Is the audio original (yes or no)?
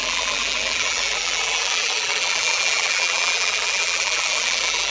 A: no